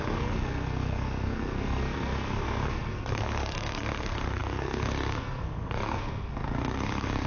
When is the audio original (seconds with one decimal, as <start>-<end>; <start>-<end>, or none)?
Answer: none